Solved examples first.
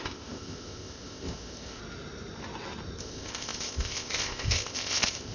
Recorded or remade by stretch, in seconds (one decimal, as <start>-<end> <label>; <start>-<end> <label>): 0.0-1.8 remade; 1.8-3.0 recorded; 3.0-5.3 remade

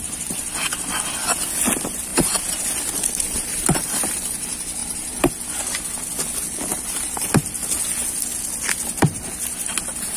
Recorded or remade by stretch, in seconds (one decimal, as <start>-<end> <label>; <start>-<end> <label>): 0.0-2.1 recorded; 2.1-3.8 remade; 3.8-4.8 recorded; 4.8-5.3 remade; 5.3-6.7 recorded; 6.7-7.3 remade; 7.3-10.2 recorded

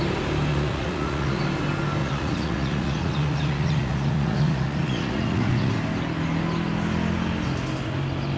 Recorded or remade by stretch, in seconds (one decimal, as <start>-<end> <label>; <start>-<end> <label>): 0.0-0.5 recorded; 0.5-1.4 remade; 1.4-2.0 recorded; 2.0-5.7 remade; 5.7-8.4 recorded